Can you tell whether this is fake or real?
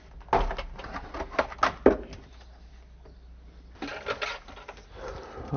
real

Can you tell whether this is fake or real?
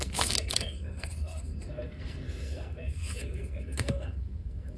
fake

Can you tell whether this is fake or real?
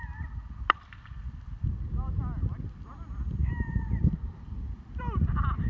real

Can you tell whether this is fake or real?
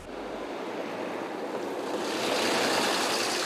real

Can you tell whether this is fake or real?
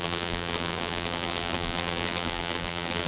fake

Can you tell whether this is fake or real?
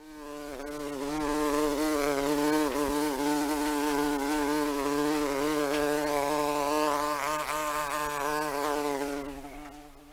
real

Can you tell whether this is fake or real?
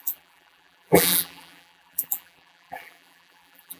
fake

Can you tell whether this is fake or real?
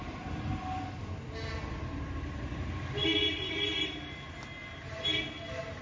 real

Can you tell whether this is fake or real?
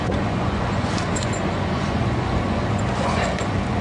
fake